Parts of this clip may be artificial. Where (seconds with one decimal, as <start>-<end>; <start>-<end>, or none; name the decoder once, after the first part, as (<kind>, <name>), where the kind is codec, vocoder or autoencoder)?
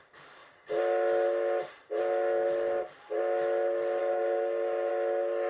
4.0-4.9 (codec, DAC)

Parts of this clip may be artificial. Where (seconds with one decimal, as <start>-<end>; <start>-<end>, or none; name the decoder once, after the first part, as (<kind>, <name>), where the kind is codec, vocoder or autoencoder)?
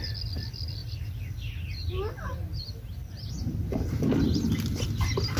none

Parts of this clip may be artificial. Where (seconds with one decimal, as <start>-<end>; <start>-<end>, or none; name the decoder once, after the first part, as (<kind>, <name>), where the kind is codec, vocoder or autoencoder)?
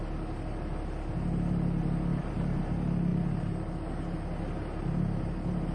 2.1-2.6 (vocoder, BigVGAN v2)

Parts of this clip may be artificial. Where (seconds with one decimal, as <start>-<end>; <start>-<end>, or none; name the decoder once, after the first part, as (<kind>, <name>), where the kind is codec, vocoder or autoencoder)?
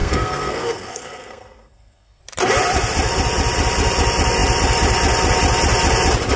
0.0-2.2 (codec, SNAC)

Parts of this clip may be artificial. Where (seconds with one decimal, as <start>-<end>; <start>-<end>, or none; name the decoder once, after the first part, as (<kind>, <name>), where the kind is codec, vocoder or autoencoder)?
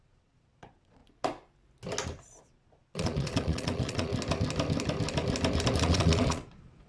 0.0-1.0 (vocoder, Vocos); 2.4-4.1; 5.8-6.9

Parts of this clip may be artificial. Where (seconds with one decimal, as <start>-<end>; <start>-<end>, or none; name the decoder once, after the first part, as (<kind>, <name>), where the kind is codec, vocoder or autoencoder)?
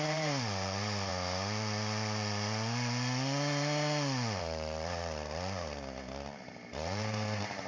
0.0-1.1 (vocoder, BigVGAN v2); 4.4-7.7